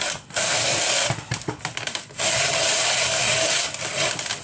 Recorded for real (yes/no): yes